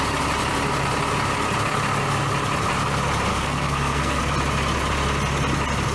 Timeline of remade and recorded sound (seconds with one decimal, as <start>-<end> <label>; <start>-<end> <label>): 0.0-3.3 recorded; 3.3-4.2 remade; 4.2-5.9 recorded